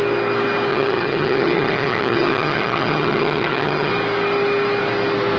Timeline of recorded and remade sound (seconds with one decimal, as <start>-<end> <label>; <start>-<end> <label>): 0.0-0.7 recorded; 0.7-3.9 remade; 3.9-5.4 recorded